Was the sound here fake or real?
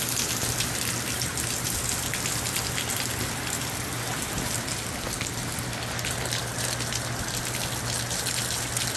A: real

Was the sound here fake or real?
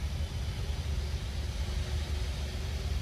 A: real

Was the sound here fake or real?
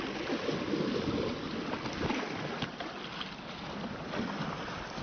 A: real